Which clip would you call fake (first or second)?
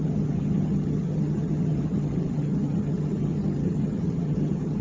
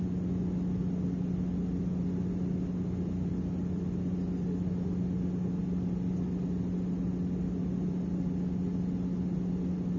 first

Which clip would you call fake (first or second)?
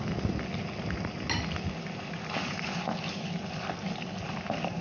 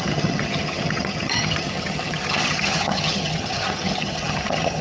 second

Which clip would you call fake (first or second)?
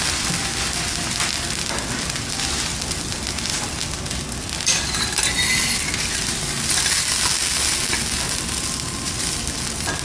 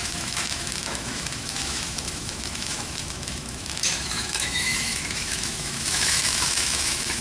second